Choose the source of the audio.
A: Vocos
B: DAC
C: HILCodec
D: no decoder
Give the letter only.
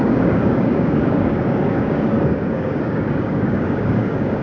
B